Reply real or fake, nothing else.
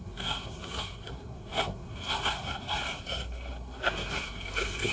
fake